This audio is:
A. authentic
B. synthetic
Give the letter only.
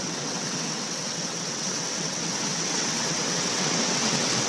B